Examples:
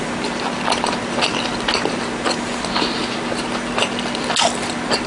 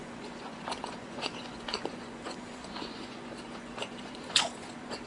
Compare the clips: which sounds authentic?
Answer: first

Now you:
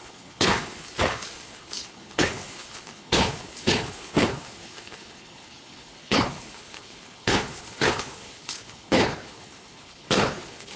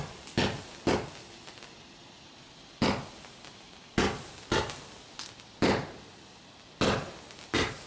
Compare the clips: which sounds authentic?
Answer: second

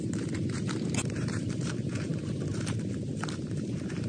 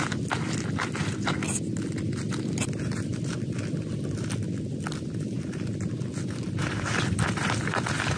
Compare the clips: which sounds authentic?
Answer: second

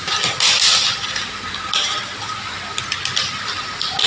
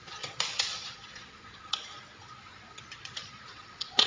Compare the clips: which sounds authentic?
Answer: first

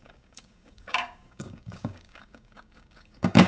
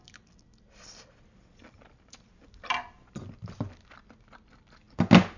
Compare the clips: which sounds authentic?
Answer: second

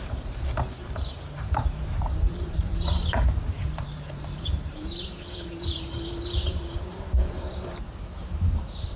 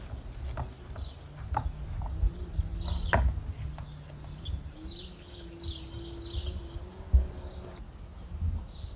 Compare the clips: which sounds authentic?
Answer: second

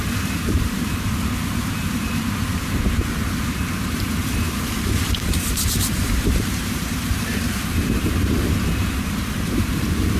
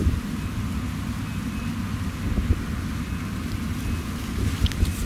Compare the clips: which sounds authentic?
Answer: second